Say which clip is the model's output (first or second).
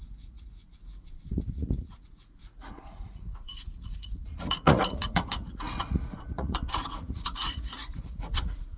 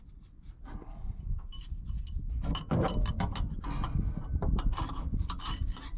first